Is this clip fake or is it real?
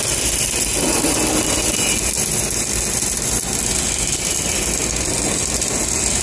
real